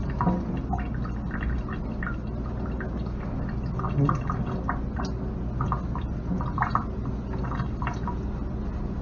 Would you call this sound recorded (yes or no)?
yes